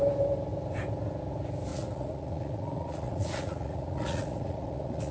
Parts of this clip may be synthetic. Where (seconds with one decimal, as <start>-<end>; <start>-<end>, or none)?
1.7-5.1